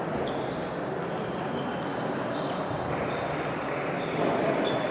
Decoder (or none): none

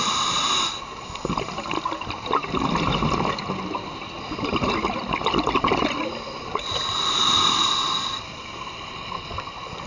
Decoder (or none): none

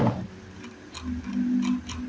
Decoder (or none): none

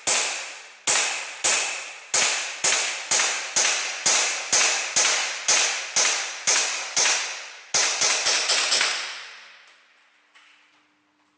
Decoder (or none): none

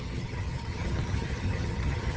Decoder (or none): vocoder, HiFi-GAN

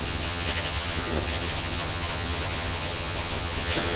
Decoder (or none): vocoder, HiFi-GAN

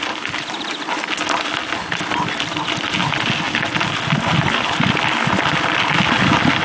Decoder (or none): none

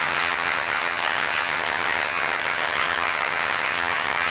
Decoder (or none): vocoder, HiFi-GAN